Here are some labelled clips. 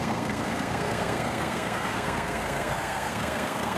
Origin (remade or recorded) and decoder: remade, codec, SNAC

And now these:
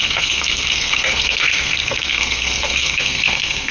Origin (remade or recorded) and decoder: remade, codec, SNAC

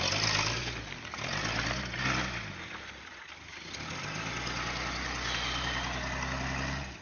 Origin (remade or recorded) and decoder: recorded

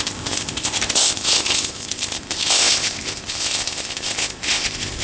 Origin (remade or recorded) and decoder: remade, codec, ZipCodec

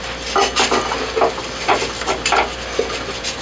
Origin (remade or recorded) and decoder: recorded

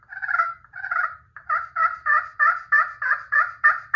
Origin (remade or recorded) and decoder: remade, vocoder, BigVGAN v2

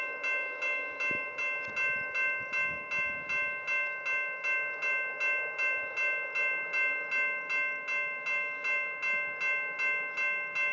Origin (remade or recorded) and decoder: recorded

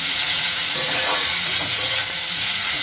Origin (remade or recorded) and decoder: remade, vocoder, Vocos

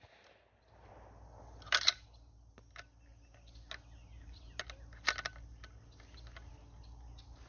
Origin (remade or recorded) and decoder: recorded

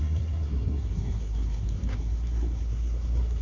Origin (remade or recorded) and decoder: remade, codec, SNAC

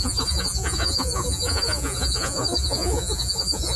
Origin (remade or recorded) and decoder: remade, vocoder, Vocos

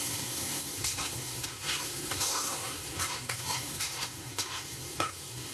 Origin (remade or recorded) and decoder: remade, codec, SNAC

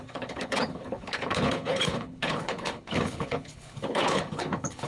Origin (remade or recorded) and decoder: remade, codec, HILCodec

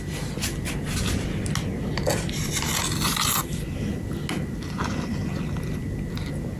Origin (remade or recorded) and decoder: recorded